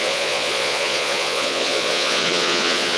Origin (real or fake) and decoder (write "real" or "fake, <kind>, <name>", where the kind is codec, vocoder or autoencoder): fake, vocoder, Vocos